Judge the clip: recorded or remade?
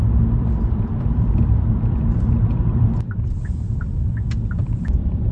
remade